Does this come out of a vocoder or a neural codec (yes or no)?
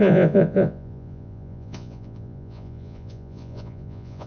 yes